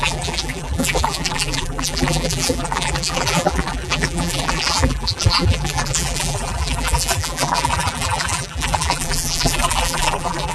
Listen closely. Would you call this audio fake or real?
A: fake